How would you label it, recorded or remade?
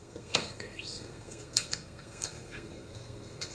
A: remade